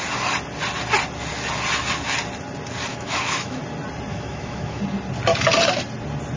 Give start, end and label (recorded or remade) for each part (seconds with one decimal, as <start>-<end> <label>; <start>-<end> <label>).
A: 0.0-2.9 recorded; 2.9-3.6 remade; 3.6-4.1 recorded; 4.1-4.8 remade; 4.8-6.4 recorded